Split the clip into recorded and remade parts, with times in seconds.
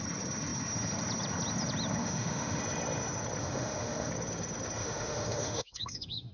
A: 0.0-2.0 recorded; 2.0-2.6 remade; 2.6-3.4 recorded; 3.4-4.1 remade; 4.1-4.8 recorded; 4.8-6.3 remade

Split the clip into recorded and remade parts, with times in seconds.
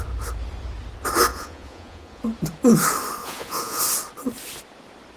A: 0.0-1.3 recorded; 1.3-2.2 remade; 2.2-3.2 recorded; 3.2-3.8 remade; 3.8-5.2 recorded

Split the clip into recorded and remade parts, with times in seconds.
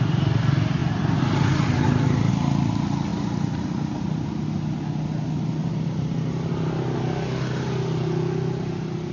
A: 0.0-0.8 recorded; 0.8-2.3 remade; 2.3-3.1 recorded; 3.1-4.3 remade; 4.3-5.6 recorded; 5.6-6.5 remade; 6.5-9.1 recorded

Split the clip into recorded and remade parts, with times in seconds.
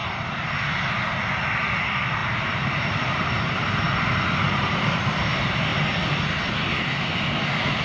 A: 0.0-2.2 recorded; 2.2-5.0 remade; 5.0-7.8 recorded